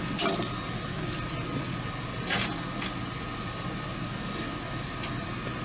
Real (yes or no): yes